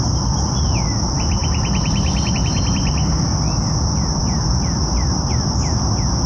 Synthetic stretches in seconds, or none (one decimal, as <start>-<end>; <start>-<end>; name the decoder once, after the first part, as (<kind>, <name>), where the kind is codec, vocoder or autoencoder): none